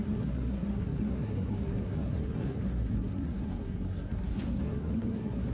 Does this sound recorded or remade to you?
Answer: remade